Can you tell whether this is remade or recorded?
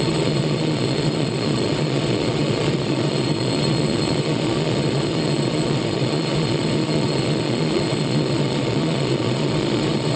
remade